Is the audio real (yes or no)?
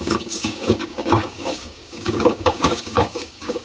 no